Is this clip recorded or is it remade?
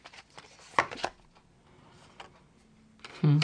recorded